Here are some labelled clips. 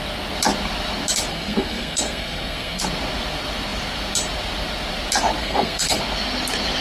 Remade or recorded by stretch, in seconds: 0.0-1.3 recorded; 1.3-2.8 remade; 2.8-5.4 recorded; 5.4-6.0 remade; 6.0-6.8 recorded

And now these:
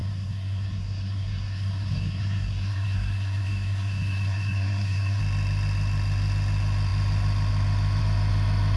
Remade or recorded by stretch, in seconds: 0.0-5.2 remade; 5.2-8.8 recorded

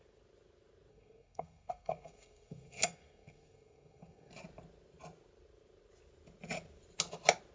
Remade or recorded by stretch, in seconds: 0.0-0.9 recorded; 0.9-4.3 remade; 4.3-7.5 recorded

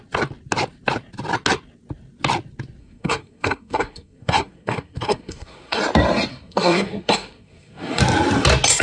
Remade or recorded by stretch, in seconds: 0.0-2.8 recorded; 2.8-5.8 remade; 5.8-6.3 recorded; 6.3-8.0 remade; 8.0-8.8 recorded

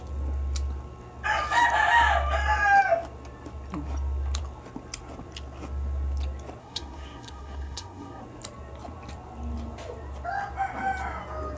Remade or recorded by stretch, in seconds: 0.0-6.6 recorded; 6.6-8.2 remade; 8.2-11.6 recorded

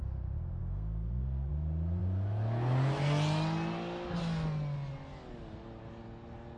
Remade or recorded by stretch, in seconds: 0.0-0.6 recorded; 0.6-1.5 remade; 1.5-6.6 recorded

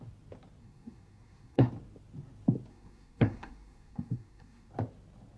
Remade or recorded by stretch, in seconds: 0.0-0.6 recorded; 0.6-1.7 remade; 1.7-2.7 recorded; 2.7-4.7 remade; 4.7-5.4 recorded

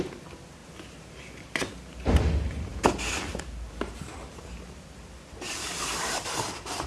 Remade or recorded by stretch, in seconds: 0.0-6.9 recorded